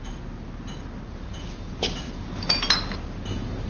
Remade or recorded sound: recorded